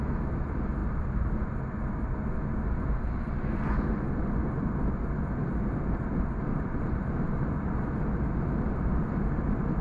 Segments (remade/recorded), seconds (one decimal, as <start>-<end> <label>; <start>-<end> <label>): 0.0-6.5 recorded; 6.5-7.4 remade; 7.4-9.8 recorded